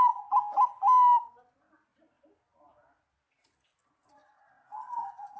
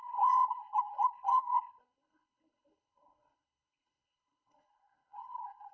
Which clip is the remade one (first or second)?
second